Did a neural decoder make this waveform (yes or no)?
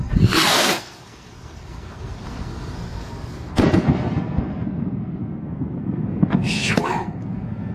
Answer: yes